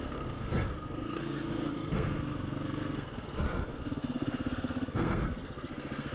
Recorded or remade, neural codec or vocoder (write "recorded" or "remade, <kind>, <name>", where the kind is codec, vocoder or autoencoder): remade, codec, SNAC